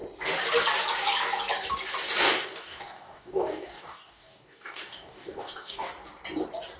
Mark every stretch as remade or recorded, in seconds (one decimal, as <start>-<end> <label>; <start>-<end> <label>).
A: 0.0-2.2 recorded; 2.2-5.9 remade; 5.9-6.8 recorded